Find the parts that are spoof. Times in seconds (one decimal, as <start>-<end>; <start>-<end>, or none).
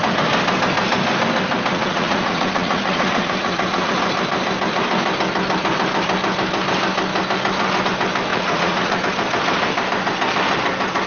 1.7-3.9; 8.3-9.0